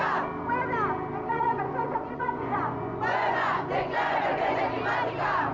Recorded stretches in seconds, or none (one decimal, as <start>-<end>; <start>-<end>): 0.0-1.3; 4.6-5.5